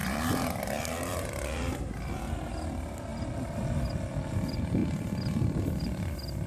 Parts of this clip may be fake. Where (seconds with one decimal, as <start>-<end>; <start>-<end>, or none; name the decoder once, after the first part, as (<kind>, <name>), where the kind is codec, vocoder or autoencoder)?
0.0-3.1 (vocoder, BigVGAN v2); 4.3-4.8; 5.6-6.5